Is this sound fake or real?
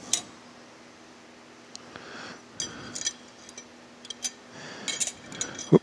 real